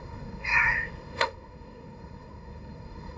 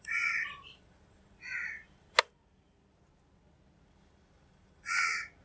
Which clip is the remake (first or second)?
first